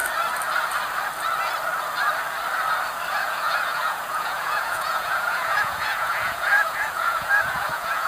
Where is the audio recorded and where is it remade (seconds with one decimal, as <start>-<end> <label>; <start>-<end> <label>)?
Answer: 0.0-3.1 recorded; 3.1-8.1 remade